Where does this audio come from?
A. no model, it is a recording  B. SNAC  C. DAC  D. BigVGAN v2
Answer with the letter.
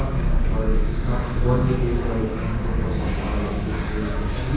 C